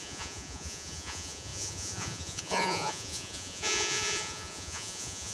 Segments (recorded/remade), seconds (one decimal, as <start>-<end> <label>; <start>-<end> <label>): 0.0-5.3 remade